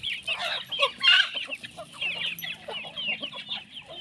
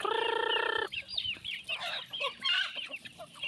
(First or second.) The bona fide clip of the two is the first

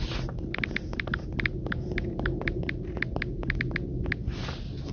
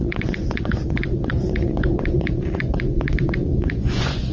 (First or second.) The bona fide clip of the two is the first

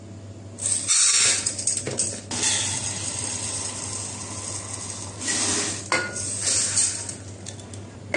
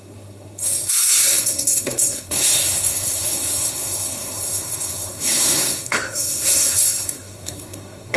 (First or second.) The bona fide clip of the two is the first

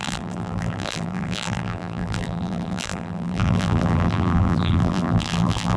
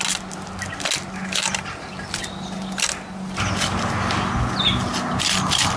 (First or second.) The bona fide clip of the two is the second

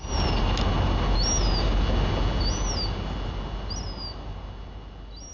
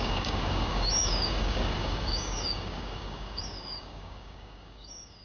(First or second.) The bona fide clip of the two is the first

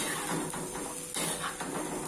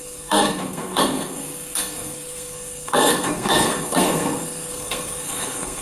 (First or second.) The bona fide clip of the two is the first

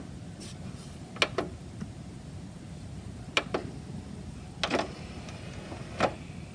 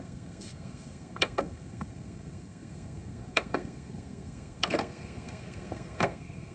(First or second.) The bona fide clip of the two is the first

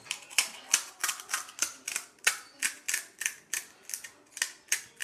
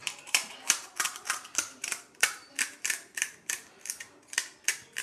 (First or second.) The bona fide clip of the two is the first